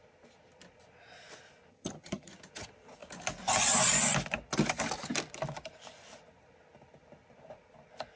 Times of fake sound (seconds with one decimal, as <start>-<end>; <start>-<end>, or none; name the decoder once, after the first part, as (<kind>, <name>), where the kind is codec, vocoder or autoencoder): 1.7-2.3 (vocoder, HiFi-GAN)